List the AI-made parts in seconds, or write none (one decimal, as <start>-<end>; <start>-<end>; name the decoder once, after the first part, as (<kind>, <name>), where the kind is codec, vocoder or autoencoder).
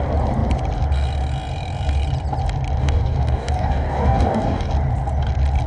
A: 2.8-4.7 (codec, DAC)